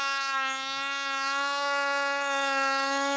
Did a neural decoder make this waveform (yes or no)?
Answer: yes